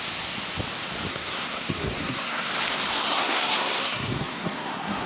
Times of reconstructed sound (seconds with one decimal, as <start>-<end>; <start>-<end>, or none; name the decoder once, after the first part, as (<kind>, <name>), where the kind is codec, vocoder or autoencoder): 1.1-2.5 (codec, SNAC); 2.9-5.1